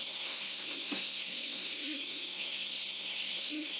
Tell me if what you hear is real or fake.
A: fake